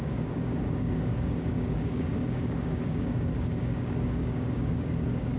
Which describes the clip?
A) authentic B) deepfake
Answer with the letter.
B